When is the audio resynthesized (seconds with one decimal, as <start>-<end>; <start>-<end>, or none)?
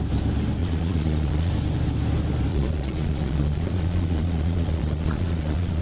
0.6-1.5; 2.5-5.8